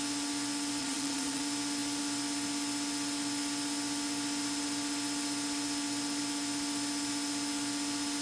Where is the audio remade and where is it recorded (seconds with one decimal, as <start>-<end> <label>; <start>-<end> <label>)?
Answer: 0.0-0.8 recorded; 0.8-1.4 remade; 1.4-8.2 recorded